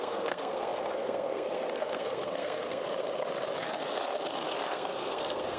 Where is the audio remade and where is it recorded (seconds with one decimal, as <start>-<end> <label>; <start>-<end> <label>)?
0.0-2.8 remade; 2.8-4.7 recorded; 4.7-5.6 remade